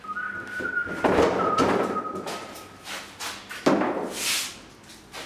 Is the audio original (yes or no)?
yes